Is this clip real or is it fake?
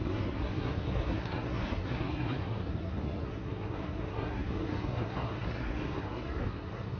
fake